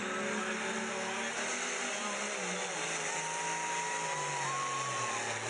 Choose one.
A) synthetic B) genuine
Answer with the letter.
B